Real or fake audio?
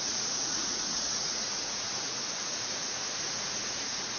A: fake